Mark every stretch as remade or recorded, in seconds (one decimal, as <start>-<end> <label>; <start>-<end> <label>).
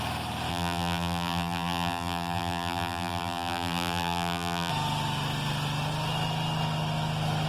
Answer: 0.0-0.5 recorded; 0.5-4.7 remade; 4.7-7.5 recorded